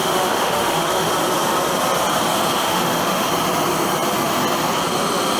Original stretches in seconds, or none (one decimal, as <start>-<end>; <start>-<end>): 1.1-2.6; 3.3-5.4